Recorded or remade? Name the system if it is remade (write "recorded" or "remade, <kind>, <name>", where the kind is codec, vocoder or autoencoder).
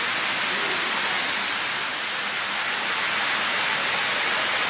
recorded